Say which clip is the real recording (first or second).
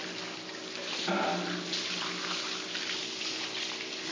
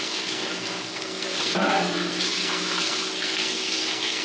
first